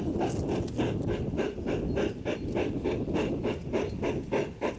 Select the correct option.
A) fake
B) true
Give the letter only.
B